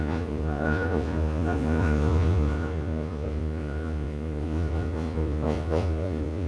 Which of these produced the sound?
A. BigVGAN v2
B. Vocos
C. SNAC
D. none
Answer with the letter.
B